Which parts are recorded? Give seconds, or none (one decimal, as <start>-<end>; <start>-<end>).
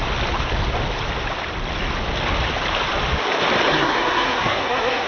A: 0.0-3.7